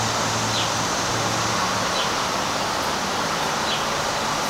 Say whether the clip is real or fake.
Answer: real